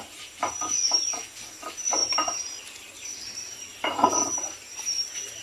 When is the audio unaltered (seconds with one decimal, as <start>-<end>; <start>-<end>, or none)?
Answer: 0.0-2.0; 3.8-5.4